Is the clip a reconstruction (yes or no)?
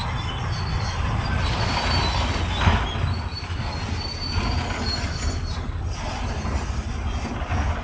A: no